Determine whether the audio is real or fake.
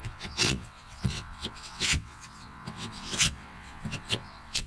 fake